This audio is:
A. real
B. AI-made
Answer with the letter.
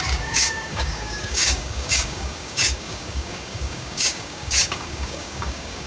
B